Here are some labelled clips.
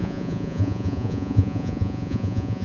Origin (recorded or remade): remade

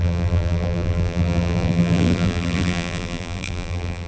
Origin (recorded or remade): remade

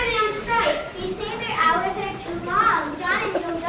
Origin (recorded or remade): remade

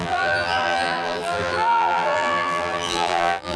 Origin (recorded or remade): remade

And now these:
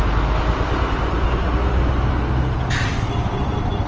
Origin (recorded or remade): recorded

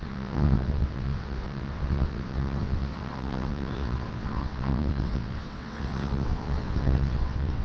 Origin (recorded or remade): remade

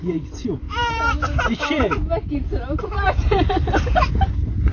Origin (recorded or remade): remade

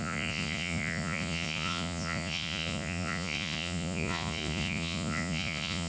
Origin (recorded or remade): remade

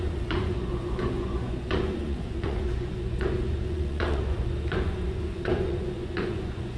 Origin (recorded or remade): remade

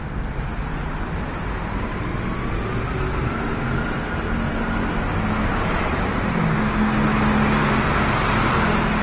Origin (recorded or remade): recorded